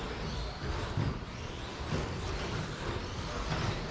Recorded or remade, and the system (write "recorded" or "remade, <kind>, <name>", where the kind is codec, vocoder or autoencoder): recorded